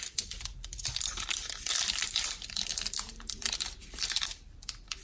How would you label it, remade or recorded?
remade